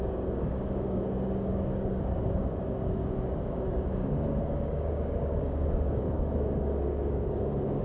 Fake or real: fake